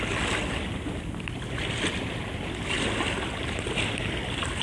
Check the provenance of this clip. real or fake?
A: real